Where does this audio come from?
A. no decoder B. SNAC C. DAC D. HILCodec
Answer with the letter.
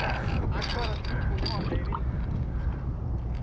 A